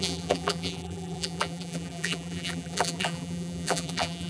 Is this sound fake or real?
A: fake